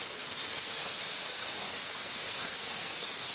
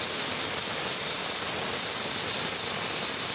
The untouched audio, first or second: second